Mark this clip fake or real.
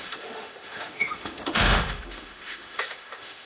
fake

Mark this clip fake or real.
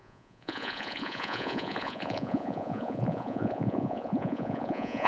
fake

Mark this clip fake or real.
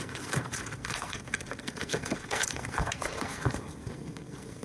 fake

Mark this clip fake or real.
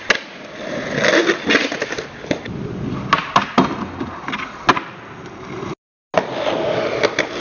real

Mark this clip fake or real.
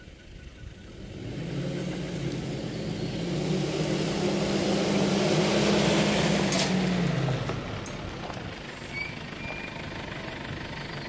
real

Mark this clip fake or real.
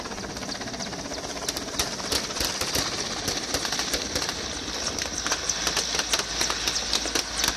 real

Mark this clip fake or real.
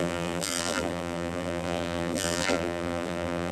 fake